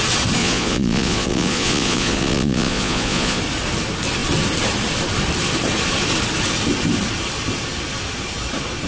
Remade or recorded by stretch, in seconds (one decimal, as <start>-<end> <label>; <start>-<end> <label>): 0.0-0.4 recorded; 0.4-3.4 remade; 3.4-8.9 recorded